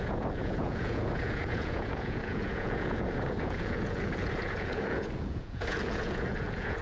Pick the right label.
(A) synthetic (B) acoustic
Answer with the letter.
A